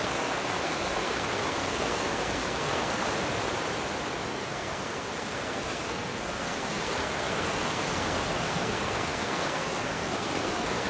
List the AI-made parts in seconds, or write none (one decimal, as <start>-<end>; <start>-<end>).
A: 0.0-3.0; 4.3-10.9